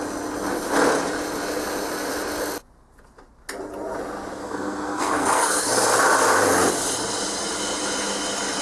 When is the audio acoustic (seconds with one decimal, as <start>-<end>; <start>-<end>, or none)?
0.0-4.4; 5.7-8.6